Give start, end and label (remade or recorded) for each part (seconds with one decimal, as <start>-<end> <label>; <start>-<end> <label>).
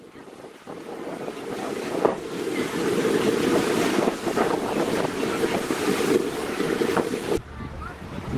0.0-1.6 recorded; 1.6-2.5 remade; 2.5-3.9 recorded; 3.9-4.6 remade; 4.6-8.4 recorded